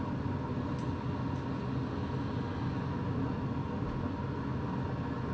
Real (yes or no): yes